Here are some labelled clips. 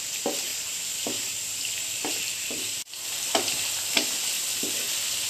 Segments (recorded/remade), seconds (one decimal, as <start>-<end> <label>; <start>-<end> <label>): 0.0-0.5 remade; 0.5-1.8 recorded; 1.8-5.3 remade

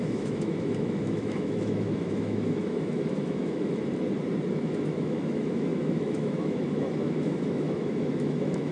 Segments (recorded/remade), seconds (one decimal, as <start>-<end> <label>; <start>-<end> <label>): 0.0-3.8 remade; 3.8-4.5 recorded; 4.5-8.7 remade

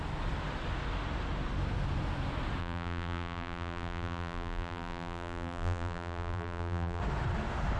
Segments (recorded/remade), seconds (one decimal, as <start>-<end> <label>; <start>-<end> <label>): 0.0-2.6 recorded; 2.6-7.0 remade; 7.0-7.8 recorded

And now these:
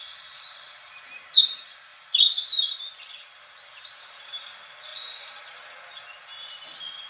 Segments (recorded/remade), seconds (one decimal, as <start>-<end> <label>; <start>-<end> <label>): 0.0-1.9 recorded; 1.9-4.0 remade; 4.0-7.1 recorded

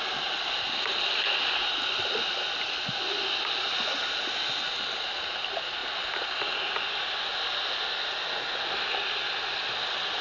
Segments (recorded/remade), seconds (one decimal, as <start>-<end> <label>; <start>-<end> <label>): 0.0-10.2 recorded

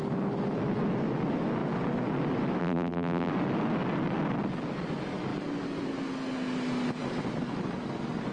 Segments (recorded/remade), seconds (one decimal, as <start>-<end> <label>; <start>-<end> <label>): 0.0-2.6 recorded; 2.6-3.3 remade; 3.3-8.3 recorded

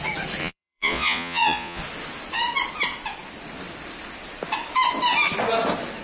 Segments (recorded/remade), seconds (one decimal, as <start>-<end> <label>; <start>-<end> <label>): 0.0-0.4 recorded; 0.4-1.8 remade; 1.8-6.0 recorded

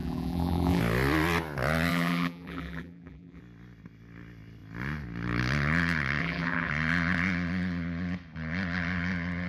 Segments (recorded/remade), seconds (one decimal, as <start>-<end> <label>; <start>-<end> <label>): 0.0-0.8 remade; 0.8-1.9 recorded; 1.9-3.4 remade; 3.4-6.2 recorded; 6.2-6.7 remade; 6.7-9.5 recorded